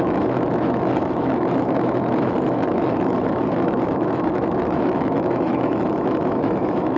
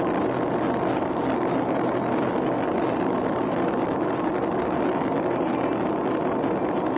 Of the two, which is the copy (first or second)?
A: first